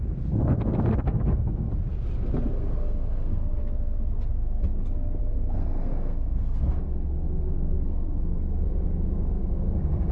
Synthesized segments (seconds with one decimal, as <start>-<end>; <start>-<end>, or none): 0.0-1.7; 2.5-3.6; 5.2-10.1